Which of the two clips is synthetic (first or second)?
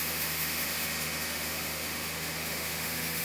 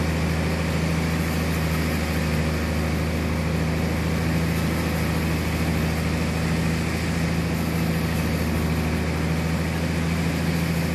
first